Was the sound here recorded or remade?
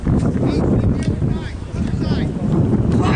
recorded